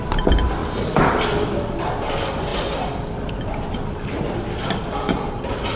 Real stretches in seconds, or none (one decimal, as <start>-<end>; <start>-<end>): 0.0-0.6; 1.1-5.8